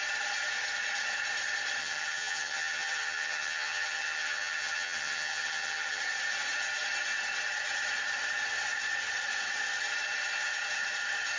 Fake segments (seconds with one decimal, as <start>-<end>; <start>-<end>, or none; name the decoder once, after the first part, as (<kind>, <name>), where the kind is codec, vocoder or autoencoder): 1.8-6.0 (vocoder, HiFi-GAN)